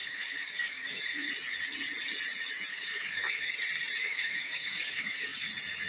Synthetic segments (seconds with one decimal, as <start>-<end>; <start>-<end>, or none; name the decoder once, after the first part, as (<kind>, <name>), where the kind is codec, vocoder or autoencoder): 0.0-1.3 (codec, DAC); 2.7-3.5; 4.0-5.5